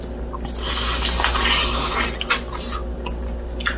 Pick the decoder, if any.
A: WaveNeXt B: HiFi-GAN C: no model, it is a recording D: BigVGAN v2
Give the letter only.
C